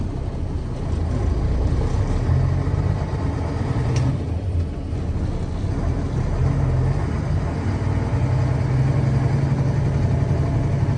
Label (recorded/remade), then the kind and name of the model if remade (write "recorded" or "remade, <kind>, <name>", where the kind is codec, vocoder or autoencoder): recorded